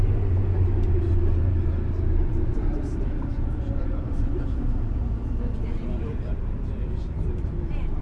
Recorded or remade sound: remade